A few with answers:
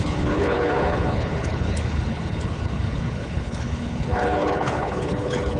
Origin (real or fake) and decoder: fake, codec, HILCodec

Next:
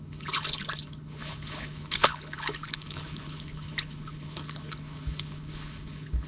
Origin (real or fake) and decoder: fake, codec, HILCodec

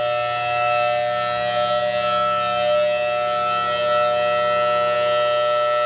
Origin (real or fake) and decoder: real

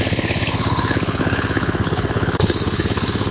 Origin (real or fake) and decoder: fake, codec, HILCodec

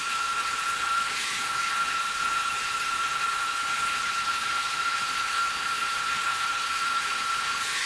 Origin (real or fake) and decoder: fake, codec, HILCodec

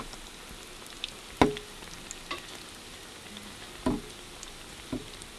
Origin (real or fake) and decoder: real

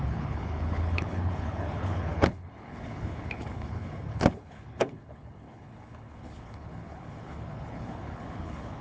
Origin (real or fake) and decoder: fake, codec, HILCodec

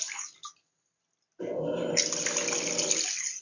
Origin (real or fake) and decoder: real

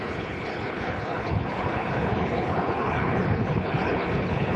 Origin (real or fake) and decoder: fake, codec, HILCodec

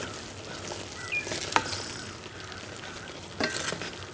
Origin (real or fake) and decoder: real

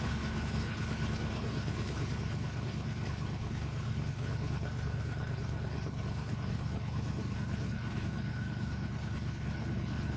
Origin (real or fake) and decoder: fake, codec, HILCodec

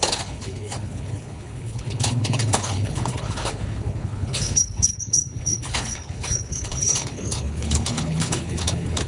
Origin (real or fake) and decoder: fake, codec, HILCodec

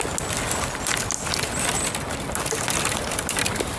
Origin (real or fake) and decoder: real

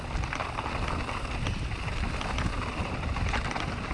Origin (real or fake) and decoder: real